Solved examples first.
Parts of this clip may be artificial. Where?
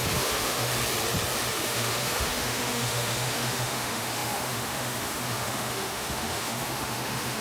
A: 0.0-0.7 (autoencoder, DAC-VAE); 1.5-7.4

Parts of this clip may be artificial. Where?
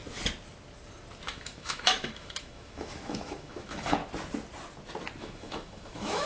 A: 1.3-4.0 (autoencoder, DAC-VAE); 5.2-6.3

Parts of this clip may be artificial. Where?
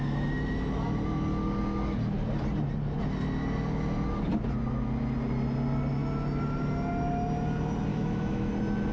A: 7.9-8.5 (autoencoder, DAC-VAE)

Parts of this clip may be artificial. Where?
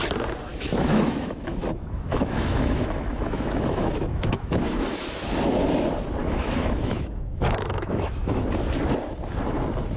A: 0.5-5.3 (autoencoder, DAC-VAE); 6.2-8.4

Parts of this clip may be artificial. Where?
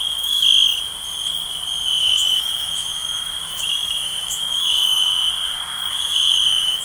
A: 0.0-0.7 (autoencoder, DAC-VAE); 2.0-5.1; 5.9-6.8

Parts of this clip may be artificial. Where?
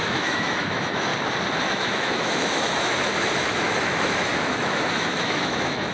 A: 0.0-1.1 (autoencoder, DAC-VAE); 1.6-5.9